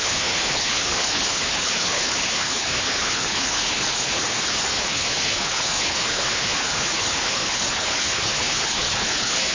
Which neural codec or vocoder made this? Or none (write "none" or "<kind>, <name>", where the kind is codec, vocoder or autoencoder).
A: codec, HILCodec